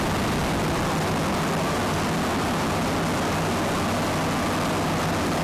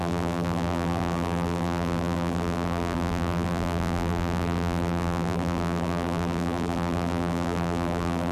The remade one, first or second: second